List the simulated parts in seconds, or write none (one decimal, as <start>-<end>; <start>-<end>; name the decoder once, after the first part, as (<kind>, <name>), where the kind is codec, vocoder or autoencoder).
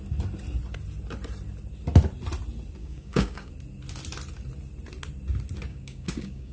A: 2.8-3.5 (codec, DAC); 5.7-6.5